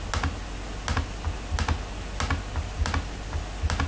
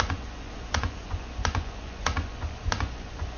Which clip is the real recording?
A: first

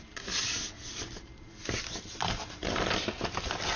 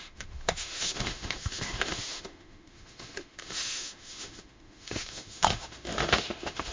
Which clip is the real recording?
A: first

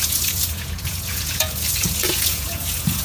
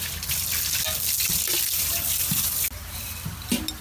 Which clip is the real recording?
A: second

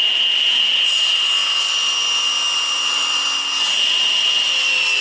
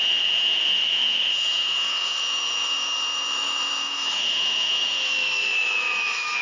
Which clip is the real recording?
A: first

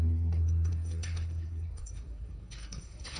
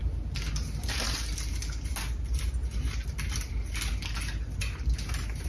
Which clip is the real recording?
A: second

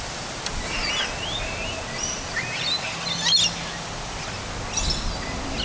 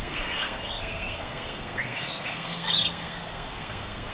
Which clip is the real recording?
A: first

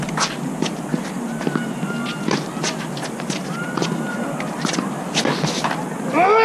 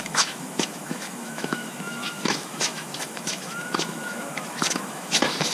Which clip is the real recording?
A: first